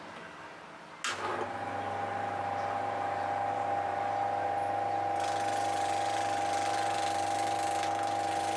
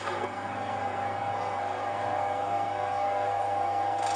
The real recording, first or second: first